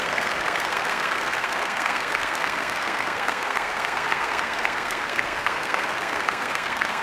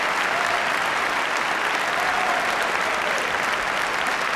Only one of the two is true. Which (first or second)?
second